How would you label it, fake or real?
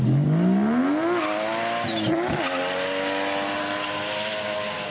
real